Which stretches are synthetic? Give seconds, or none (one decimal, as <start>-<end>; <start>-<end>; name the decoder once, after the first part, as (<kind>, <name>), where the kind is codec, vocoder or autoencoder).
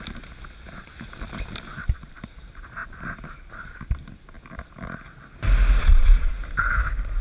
5.8-6.3 (vocoder, Vocos)